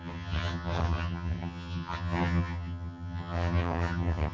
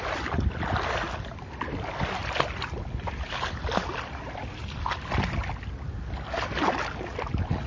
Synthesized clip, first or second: first